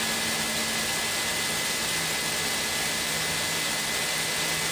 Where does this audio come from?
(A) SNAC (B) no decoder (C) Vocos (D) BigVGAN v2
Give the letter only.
B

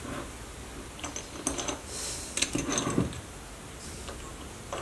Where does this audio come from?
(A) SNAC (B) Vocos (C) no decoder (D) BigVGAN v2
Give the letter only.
C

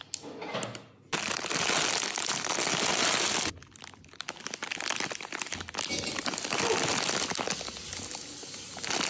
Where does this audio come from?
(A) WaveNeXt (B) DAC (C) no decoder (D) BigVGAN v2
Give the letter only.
C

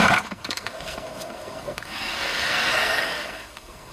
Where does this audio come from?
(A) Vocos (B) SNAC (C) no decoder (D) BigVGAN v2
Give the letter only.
B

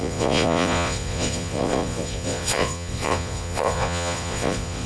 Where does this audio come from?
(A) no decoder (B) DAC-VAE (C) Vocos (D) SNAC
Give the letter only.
C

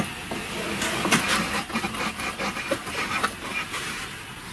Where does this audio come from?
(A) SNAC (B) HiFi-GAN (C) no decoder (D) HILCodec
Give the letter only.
C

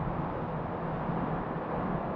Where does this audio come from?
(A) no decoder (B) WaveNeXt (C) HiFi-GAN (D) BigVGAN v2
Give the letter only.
A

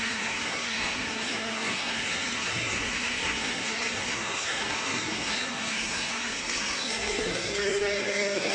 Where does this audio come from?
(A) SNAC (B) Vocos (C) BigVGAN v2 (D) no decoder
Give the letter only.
A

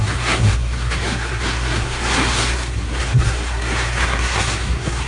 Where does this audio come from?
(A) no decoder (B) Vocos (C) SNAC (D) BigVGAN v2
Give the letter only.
C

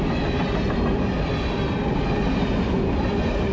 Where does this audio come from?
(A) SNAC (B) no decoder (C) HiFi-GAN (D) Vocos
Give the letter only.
B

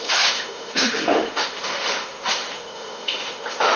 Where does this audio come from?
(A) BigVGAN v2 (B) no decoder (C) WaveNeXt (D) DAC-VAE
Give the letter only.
D